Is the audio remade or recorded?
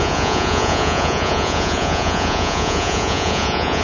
remade